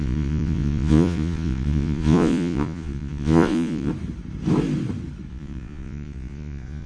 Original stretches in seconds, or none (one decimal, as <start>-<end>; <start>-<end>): 3.9-5.3